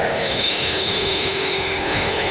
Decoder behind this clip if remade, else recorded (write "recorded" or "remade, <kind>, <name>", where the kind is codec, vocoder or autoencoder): remade, autoencoder, DAC-VAE